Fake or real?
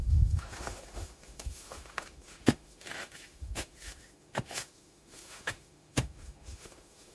fake